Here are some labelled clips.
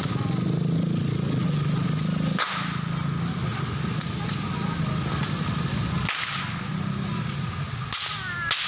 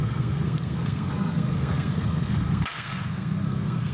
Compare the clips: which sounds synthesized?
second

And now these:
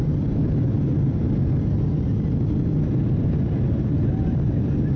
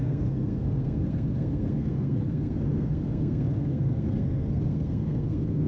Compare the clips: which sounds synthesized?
second